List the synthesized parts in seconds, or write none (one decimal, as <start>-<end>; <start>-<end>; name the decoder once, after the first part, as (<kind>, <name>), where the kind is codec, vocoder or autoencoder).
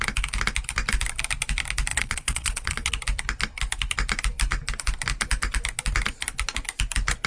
1.9-2.9 (vocoder, WaveNeXt)